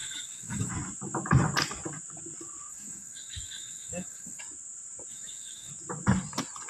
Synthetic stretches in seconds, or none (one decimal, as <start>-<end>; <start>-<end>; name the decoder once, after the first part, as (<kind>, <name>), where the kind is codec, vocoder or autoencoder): 0.0-0.7 (codec, DAC); 2.7-4.4; 5.1-5.7